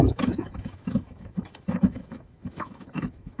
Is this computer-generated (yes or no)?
yes